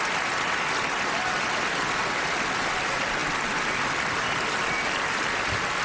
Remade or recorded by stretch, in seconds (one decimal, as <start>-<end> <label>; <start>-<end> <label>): 0.0-5.8 recorded